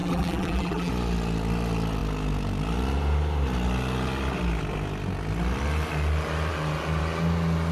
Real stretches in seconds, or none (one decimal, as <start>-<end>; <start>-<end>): 0.9-7.7